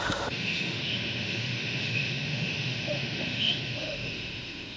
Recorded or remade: remade